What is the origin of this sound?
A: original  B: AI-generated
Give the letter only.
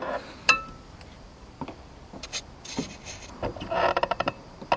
A